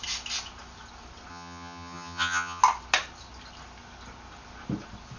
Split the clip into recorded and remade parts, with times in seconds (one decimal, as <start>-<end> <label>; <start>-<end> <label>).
0.0-1.3 recorded; 1.3-2.6 remade; 2.6-5.2 recorded